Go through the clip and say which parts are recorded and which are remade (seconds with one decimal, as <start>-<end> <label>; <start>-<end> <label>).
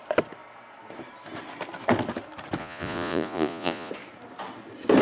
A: 0.0-2.6 recorded; 2.6-3.9 remade; 3.9-5.0 recorded